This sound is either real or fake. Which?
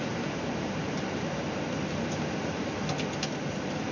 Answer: real